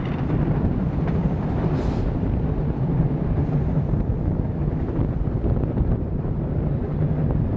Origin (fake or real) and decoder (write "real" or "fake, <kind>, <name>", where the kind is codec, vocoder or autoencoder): real